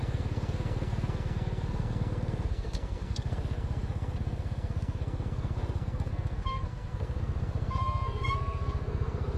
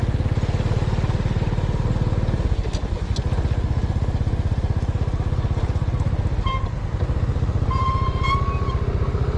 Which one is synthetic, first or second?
first